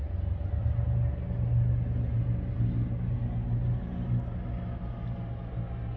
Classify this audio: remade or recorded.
recorded